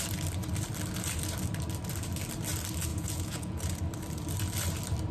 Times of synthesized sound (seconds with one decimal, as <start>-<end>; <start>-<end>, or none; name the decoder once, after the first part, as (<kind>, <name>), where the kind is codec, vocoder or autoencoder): 2.9-3.8 (vocoder, Vocos)